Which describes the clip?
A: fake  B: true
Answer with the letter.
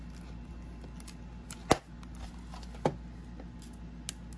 B